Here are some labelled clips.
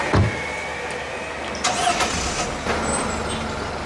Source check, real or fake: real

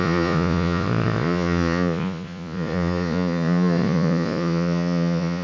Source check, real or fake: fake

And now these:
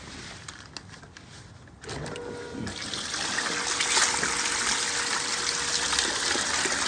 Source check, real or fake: real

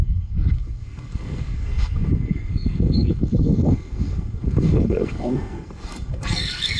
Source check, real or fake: fake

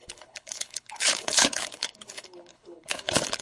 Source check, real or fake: fake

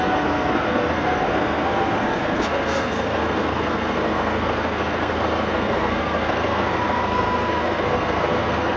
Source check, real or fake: fake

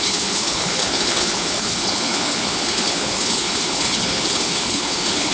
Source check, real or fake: fake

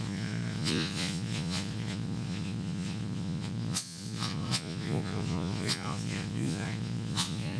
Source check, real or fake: fake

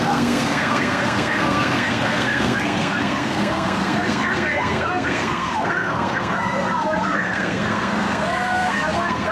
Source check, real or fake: fake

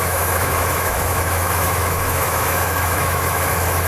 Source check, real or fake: fake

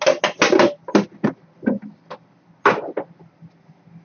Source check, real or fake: real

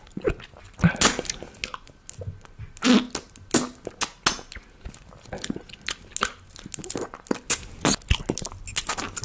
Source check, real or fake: real